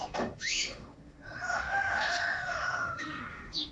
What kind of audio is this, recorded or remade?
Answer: remade